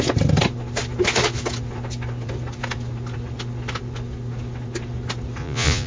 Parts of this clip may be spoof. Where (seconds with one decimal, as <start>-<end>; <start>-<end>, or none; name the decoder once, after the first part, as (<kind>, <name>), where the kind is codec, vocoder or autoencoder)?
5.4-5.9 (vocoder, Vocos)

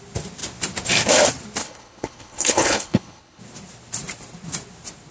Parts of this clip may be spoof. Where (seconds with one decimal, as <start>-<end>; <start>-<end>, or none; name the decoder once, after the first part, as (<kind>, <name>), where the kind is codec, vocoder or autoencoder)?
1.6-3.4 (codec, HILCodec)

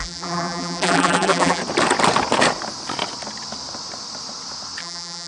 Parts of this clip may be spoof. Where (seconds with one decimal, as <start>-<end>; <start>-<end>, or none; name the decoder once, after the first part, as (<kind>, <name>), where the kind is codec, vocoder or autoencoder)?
0.0-1.6 (vocoder, BigVGAN v2); 4.8-5.3